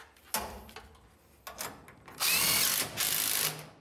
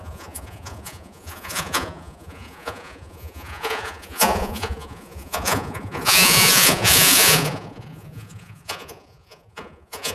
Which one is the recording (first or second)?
first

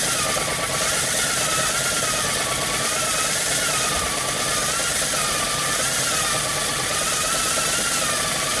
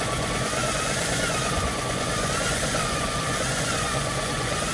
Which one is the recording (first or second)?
first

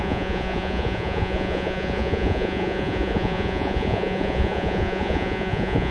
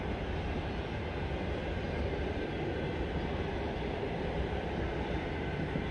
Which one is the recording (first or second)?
second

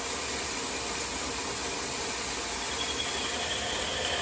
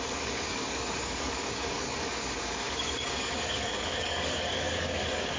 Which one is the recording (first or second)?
first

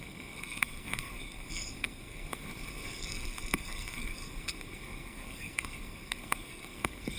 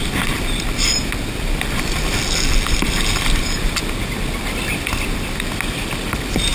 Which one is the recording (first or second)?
second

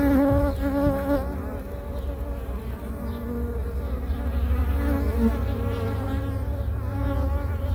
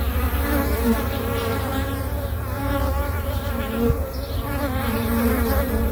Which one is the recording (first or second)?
first